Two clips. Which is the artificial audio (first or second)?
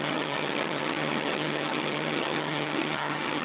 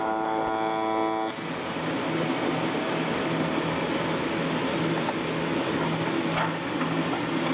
first